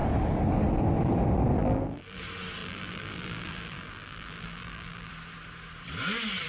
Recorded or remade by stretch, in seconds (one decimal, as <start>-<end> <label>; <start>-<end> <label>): 0.0-1.6 recorded; 1.6-2.2 remade; 2.2-2.6 recorded; 2.6-5.1 remade; 5.1-6.5 recorded